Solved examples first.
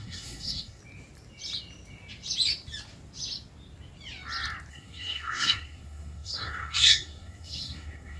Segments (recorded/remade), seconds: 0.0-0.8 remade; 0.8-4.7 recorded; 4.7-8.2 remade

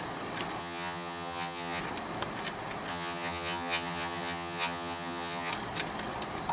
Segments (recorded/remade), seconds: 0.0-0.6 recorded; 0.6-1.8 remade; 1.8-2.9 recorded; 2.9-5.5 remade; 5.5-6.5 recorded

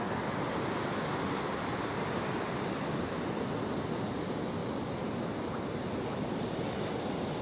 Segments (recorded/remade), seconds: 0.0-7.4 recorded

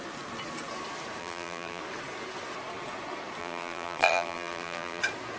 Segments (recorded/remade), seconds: 0.0-1.2 recorded; 1.2-1.8 remade; 1.8-3.4 recorded; 3.4-5.0 remade; 5.0-5.4 recorded

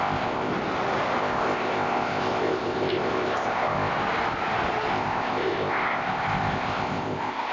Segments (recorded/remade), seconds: 0.0-0.5 remade; 0.5-1.2 recorded; 1.2-3.9 remade; 3.9-4.9 recorded; 4.9-7.5 remade